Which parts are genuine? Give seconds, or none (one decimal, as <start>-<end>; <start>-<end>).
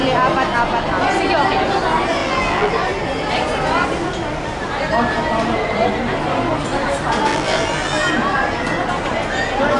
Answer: 0.0-2.2; 2.7-7.3; 8.1-9.8